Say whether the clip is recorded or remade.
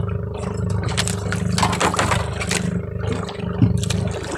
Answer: recorded